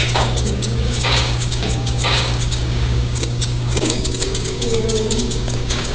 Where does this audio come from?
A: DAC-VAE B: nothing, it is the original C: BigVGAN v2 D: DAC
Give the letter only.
D